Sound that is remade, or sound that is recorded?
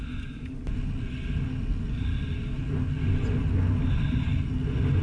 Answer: recorded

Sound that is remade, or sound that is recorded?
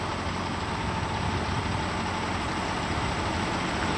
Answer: recorded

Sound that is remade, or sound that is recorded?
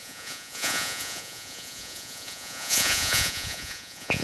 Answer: remade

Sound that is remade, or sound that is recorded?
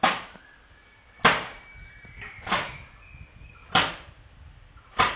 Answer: recorded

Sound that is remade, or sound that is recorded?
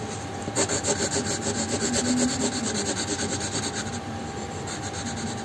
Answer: recorded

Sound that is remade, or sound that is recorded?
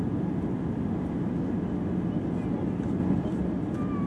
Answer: recorded